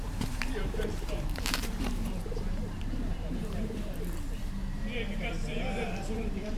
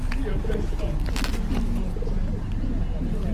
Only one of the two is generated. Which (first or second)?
first